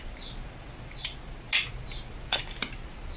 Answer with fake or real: real